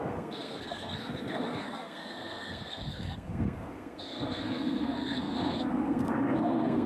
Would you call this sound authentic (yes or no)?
no